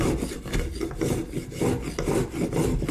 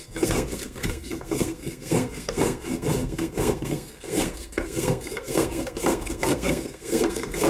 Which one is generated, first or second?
second